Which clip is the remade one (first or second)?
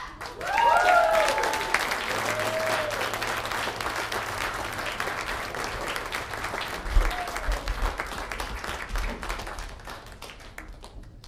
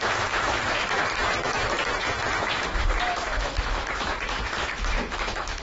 second